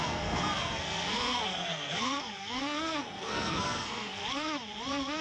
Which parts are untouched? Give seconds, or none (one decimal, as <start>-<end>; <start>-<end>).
4.2-5.2